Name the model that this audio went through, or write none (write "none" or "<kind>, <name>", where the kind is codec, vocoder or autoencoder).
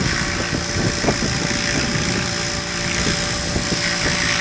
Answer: none